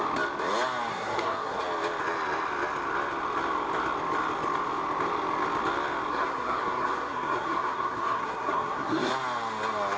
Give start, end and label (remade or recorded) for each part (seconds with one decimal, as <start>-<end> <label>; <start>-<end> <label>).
0.0-0.9 recorded; 0.9-1.6 remade; 1.6-6.1 recorded; 6.1-9.1 remade; 9.1-10.0 recorded